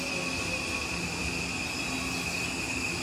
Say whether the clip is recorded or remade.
recorded